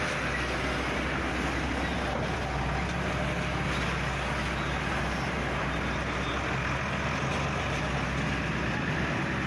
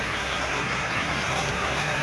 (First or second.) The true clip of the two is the first